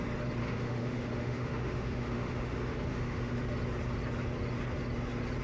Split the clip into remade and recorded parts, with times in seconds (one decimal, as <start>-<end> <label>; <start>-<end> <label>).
0.0-0.4 recorded; 0.4-3.4 remade; 3.4-5.4 recorded